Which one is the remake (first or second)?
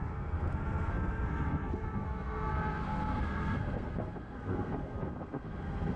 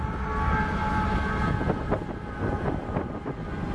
first